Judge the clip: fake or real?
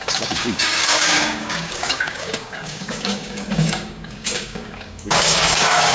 fake